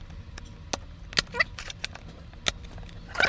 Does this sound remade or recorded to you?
recorded